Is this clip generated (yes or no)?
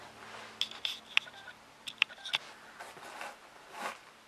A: no